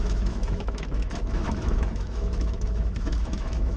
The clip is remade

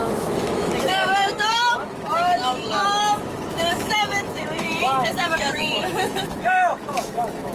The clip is remade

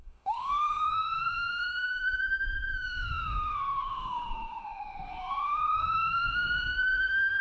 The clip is remade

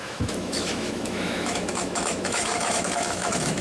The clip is remade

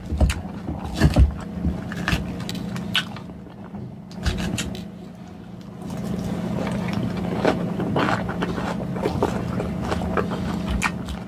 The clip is recorded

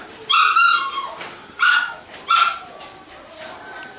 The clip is recorded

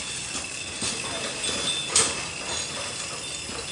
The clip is recorded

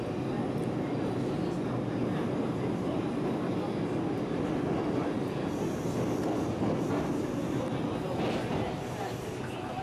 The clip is recorded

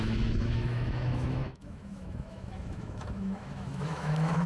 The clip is remade